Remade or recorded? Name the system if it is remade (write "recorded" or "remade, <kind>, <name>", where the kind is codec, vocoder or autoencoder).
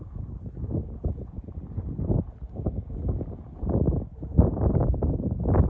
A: recorded